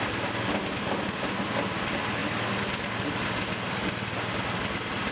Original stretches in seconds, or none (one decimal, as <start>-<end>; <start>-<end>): 0.0-5.1